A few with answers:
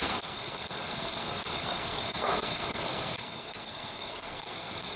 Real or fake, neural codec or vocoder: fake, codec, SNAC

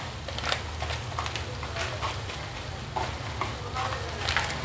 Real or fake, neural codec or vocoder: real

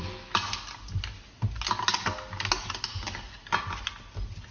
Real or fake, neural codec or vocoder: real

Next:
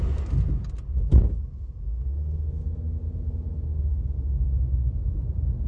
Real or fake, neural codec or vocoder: real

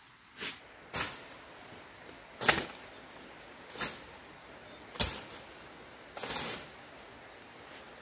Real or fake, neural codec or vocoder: real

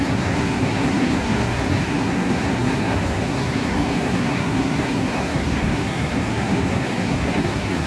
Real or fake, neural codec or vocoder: fake, codec, SNAC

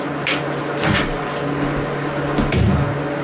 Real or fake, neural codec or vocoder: real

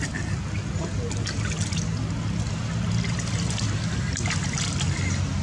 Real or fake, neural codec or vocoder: real